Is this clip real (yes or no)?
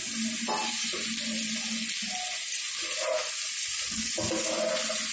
yes